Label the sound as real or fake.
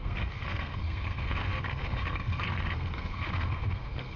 fake